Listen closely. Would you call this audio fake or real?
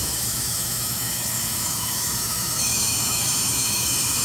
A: fake